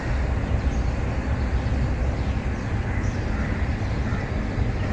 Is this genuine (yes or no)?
yes